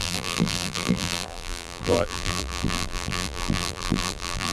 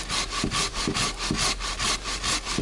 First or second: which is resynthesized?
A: first